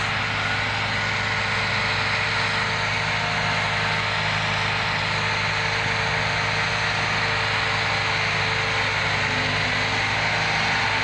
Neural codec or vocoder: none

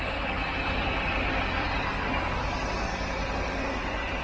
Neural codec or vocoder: none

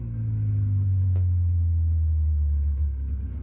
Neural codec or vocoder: none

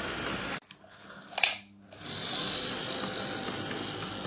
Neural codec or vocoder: none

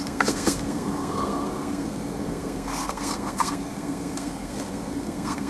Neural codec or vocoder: codec, SNAC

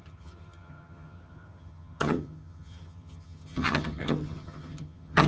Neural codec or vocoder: vocoder, HiFi-GAN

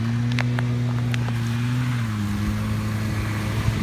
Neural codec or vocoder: none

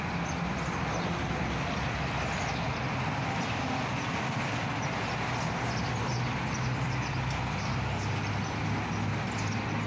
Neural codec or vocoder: none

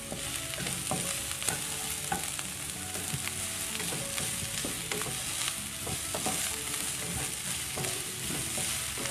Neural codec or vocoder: none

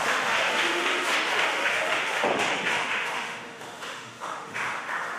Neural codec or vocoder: autoencoder, DAC-VAE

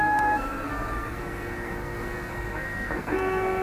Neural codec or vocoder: codec, SNAC